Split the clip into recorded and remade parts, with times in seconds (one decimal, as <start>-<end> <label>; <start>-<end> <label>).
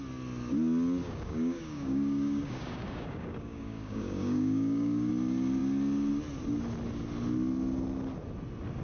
0.0-1.0 recorded; 1.0-5.1 remade; 5.1-8.8 recorded